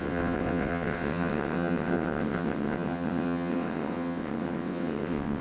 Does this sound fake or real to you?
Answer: fake